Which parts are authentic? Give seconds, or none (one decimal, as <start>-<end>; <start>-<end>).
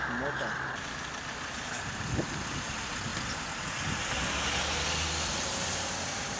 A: 0.0-6.4